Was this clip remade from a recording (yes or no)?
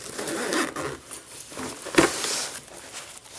no